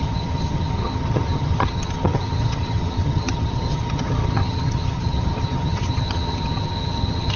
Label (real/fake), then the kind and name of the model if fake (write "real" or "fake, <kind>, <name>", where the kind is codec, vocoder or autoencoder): fake, vocoder, HiFi-GAN